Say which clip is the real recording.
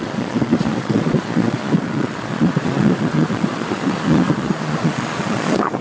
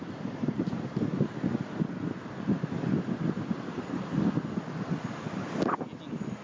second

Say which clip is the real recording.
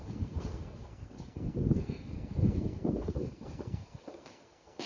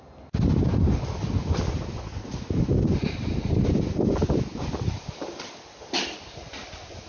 second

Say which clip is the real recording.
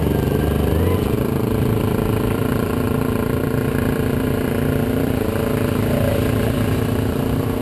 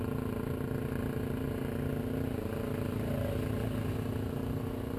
second